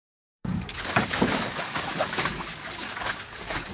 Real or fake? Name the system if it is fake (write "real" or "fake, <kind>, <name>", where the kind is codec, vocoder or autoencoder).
fake, codec, DAC